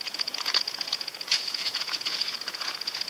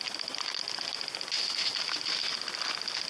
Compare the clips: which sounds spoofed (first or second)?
first